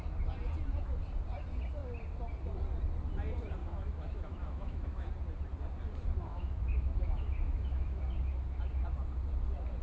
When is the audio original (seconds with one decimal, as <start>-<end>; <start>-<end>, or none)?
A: 0.0-3.6; 5.1-6.3; 8.0-9.8